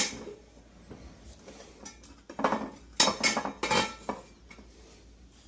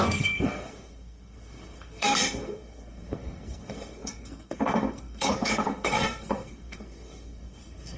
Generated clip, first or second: second